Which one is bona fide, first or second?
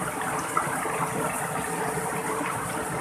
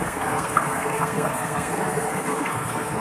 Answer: first